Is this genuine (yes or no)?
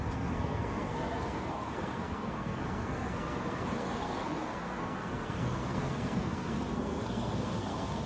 no